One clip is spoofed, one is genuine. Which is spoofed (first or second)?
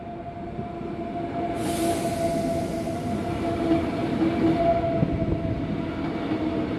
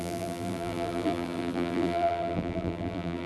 second